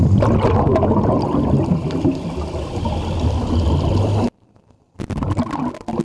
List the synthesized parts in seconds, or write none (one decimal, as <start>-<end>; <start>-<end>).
none